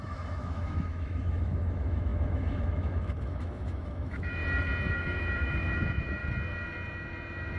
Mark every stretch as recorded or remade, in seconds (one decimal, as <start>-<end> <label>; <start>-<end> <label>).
0.0-4.4 remade; 4.4-4.9 recorded; 4.9-6.2 remade; 6.2-7.6 recorded